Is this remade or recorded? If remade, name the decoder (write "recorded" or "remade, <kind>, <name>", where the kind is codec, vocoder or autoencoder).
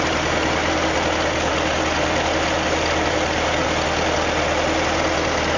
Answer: recorded